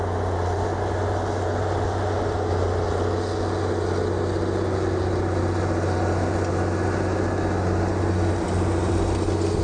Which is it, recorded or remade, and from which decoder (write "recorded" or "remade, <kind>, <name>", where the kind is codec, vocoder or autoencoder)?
recorded